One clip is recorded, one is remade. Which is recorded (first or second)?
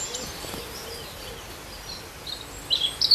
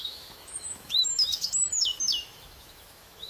first